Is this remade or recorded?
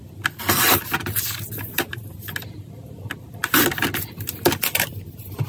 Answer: recorded